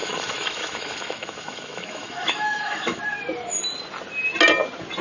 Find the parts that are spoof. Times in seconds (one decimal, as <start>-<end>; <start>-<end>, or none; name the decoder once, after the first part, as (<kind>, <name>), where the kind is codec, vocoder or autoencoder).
0.0-3.0 (autoencoder, DAC-VAE)